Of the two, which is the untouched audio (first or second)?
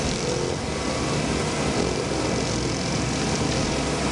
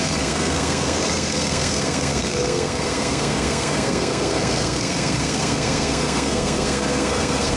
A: first